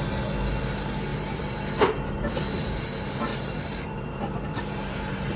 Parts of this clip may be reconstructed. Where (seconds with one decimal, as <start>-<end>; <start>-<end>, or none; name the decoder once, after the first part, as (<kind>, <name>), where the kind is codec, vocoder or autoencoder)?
3.3-5.4 (vocoder, BigVGAN v2)